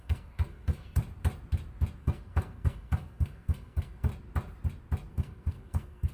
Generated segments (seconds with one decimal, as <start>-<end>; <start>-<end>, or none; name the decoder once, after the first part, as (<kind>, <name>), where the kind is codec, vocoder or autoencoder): 0.0-1.0 (codec, SNAC); 2.0-4.1; 5.1-6.1